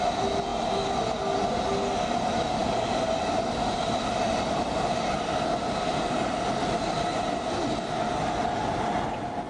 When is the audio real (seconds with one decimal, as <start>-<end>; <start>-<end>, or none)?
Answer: 0.0-9.5